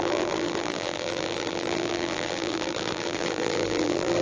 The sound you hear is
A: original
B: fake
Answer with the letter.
B